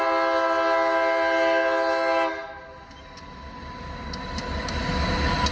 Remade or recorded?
recorded